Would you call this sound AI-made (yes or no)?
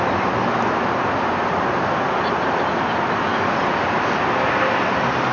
no